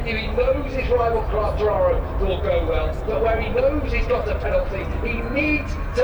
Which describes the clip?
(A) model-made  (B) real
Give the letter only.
B